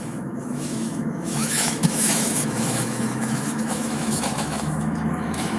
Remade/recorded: remade